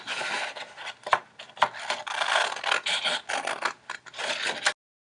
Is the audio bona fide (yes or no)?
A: yes